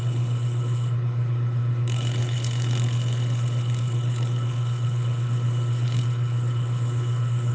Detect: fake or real fake